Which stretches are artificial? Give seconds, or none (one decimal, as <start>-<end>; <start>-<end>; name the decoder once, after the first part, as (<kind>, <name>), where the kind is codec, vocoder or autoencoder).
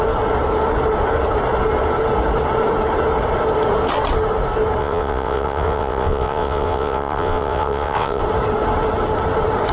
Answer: 4.8-8.2 (vocoder, WaveNeXt)